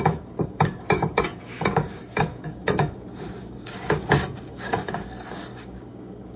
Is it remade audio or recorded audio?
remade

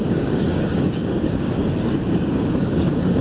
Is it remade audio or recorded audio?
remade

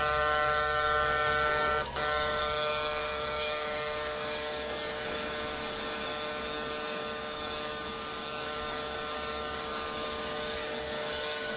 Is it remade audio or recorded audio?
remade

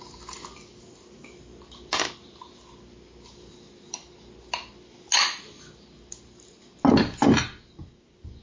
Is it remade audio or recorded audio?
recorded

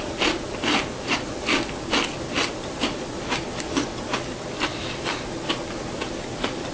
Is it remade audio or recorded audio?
recorded